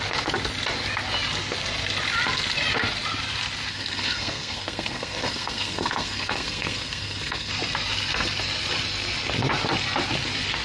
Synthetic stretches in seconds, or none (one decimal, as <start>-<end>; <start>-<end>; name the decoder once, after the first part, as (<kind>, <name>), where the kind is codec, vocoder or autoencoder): 3.7-7.5 (codec, SNAC)